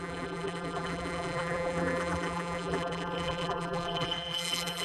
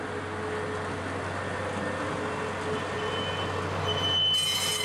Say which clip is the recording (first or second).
second